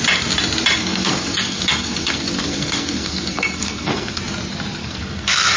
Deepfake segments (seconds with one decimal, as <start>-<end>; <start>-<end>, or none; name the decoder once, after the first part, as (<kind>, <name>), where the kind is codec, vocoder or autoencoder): 0.8-4.2 (codec, SNAC); 4.8-5.6